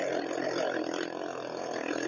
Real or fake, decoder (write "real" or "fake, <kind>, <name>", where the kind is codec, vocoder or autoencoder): real